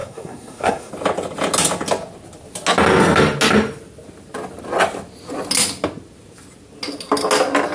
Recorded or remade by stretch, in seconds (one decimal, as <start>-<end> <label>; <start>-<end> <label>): 0.0-0.9 remade; 0.9-7.7 recorded